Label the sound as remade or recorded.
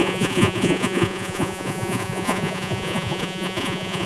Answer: remade